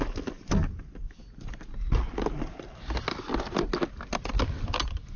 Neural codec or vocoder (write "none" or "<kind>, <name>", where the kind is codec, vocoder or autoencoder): none